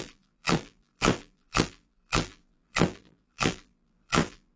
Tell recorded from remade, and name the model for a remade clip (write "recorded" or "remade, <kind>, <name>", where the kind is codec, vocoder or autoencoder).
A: remade, vocoder, BigVGAN v2